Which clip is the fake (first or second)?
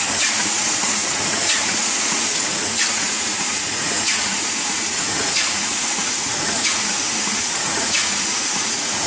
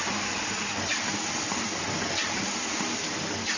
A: first